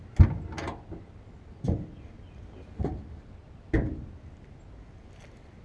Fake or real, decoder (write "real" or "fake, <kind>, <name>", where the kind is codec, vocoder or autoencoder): real